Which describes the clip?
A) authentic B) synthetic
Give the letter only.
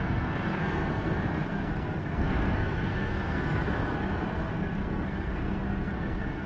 B